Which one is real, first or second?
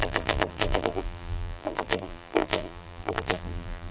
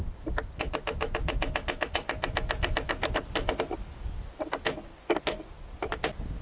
second